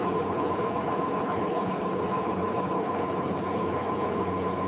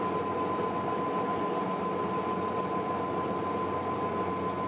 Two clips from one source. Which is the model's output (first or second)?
first